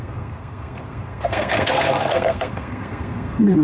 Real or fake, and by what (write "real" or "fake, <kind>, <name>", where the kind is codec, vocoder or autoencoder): fake, codec, SNAC